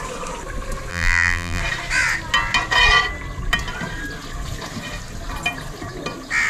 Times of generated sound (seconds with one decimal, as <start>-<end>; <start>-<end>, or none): 0.9-1.6